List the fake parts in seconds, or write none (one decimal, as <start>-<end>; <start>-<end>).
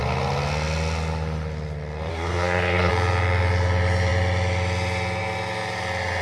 2.1-2.9